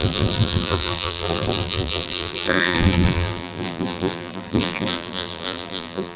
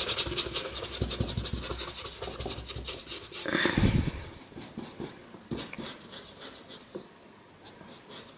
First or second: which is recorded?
second